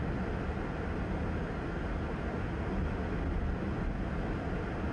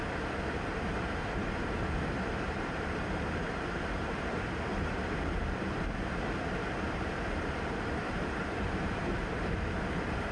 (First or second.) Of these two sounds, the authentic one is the first